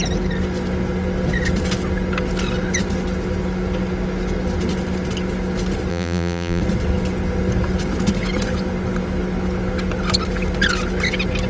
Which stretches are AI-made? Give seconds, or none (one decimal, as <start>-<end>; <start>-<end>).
5.9-6.6